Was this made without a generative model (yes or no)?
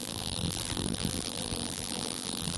no